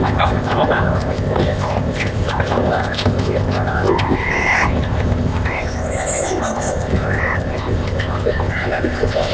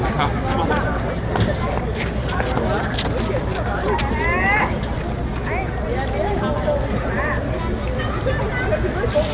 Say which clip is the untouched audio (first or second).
second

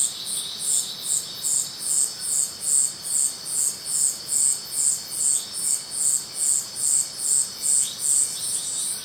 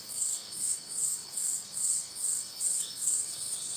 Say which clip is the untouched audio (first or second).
first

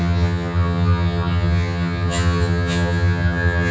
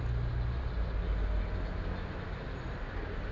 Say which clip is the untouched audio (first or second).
second